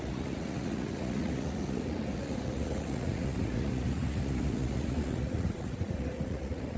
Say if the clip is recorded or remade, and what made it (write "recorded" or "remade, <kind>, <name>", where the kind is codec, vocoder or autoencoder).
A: remade, vocoder, Vocos